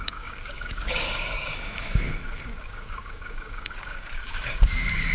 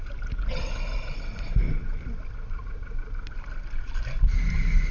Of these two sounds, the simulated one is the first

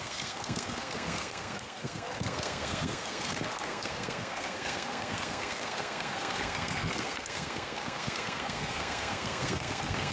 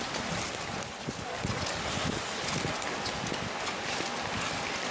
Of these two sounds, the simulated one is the first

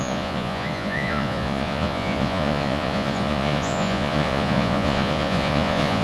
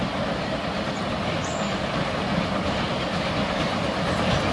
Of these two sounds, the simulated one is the first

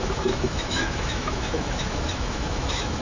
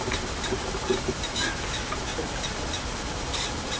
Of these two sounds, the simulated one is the first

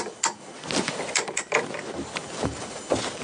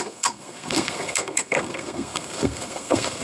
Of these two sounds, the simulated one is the second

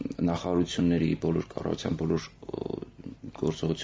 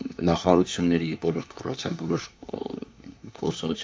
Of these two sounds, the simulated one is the second